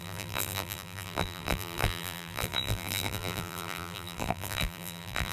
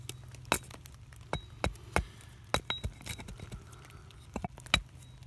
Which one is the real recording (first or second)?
second